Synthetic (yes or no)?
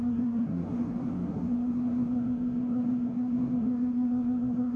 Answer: yes